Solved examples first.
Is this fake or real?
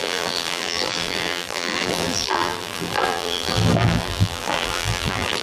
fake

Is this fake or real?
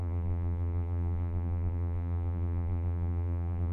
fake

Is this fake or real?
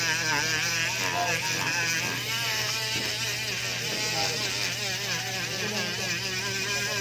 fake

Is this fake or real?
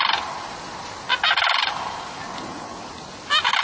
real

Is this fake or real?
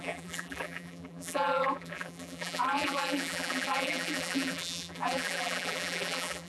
fake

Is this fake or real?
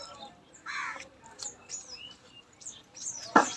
fake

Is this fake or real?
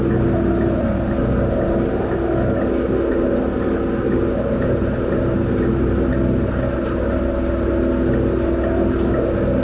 real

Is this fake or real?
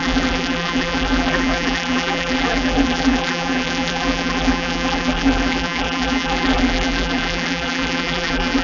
fake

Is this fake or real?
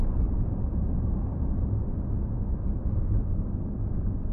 fake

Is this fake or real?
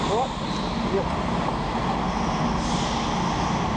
real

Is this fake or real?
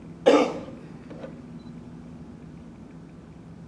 real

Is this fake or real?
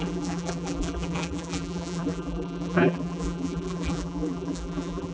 fake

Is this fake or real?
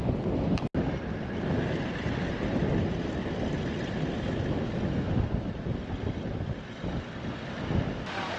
real